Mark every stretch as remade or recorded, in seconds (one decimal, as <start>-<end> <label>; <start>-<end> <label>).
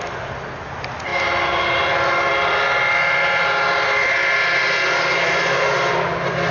0.0-6.5 recorded